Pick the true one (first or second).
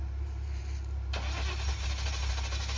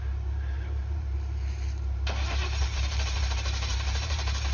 first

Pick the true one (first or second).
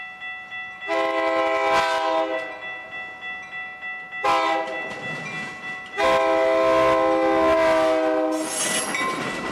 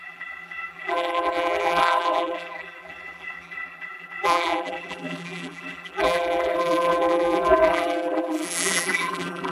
first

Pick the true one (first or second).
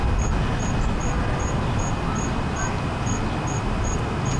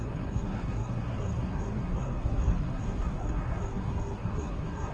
first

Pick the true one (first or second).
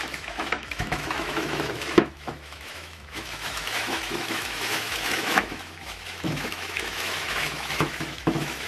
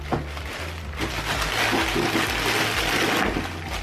second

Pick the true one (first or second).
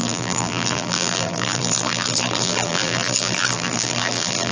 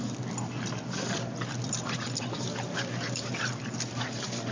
second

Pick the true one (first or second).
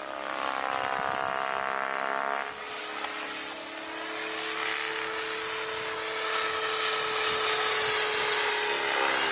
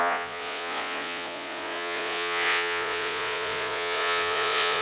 first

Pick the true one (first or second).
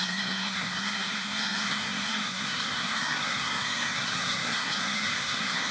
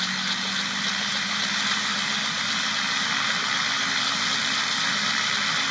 second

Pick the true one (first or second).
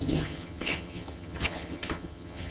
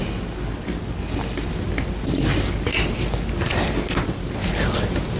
second